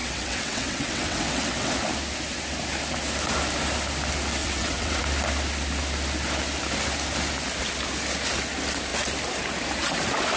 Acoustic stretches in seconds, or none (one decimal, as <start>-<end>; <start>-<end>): 1.7-4.4; 5.0-10.4